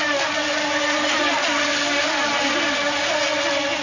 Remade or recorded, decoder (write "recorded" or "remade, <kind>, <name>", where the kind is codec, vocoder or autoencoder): recorded